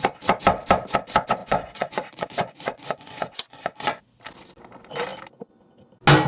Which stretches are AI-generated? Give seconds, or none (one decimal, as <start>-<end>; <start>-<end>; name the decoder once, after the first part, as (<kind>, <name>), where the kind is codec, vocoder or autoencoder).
1.4-4.0 (vocoder, Vocos)